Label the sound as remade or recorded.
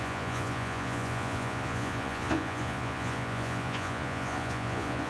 remade